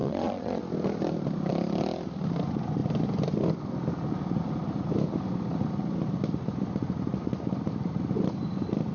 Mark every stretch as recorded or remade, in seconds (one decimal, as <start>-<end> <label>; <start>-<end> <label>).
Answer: 0.0-0.6 remade; 0.6-8.9 recorded